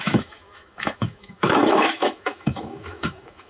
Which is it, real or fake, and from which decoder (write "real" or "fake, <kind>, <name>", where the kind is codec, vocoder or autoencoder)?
fake, autoencoder, DAC-VAE